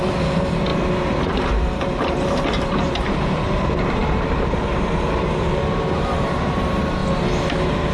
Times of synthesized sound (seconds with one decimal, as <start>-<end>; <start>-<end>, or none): 0.0-7.0